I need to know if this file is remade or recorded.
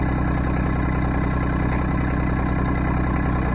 recorded